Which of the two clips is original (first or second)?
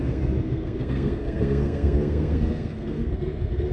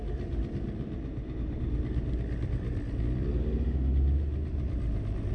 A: second